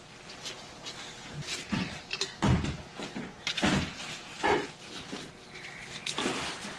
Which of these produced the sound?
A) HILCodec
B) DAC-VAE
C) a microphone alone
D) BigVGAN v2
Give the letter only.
C